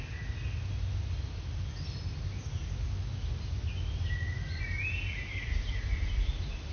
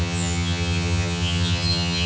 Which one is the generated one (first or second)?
second